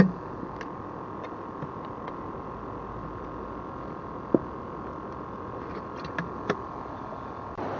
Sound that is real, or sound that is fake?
real